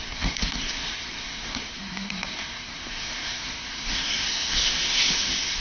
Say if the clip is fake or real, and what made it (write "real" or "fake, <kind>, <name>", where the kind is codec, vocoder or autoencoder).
fake, codec, SNAC